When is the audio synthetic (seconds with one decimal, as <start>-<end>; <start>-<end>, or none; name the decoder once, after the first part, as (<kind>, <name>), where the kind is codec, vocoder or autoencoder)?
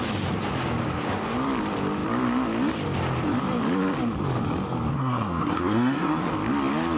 4.9-6.3 (codec, SNAC)